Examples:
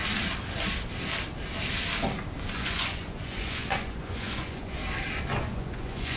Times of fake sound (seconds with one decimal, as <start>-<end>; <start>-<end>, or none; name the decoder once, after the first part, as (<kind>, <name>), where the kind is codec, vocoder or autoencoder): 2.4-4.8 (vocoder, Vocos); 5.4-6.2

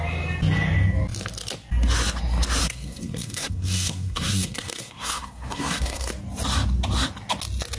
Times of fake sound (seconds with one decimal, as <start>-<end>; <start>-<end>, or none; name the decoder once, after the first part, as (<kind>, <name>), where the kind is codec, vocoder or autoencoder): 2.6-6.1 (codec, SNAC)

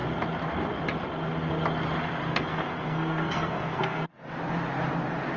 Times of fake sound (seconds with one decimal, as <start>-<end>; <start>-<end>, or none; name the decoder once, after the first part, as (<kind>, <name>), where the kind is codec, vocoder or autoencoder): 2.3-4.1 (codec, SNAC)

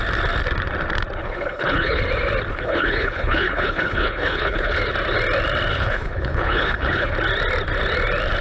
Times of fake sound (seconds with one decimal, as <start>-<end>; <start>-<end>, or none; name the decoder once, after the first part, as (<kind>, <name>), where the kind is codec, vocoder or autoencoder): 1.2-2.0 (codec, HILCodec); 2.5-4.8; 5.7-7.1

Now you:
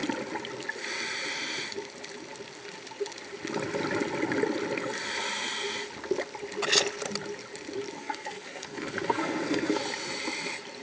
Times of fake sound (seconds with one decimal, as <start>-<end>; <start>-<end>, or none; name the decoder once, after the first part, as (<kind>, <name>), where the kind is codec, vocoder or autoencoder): 8.0-9.8 (codec, SNAC)

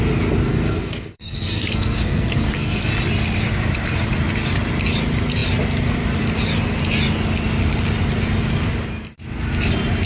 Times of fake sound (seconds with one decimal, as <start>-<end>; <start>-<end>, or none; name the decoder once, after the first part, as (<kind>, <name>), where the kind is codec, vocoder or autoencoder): 0.5-2.9 (codec, SNAC)